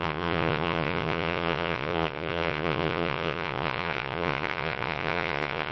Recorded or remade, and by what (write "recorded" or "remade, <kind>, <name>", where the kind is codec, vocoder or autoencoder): remade, vocoder, Vocos